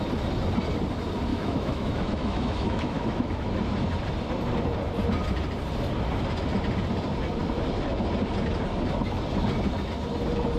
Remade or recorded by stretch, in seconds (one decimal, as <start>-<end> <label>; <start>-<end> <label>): 0.0-1.3 recorded; 1.3-3.5 remade; 3.5-10.6 recorded